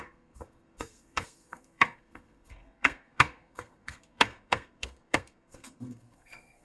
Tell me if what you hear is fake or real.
fake